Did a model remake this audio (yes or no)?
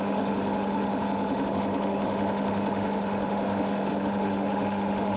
yes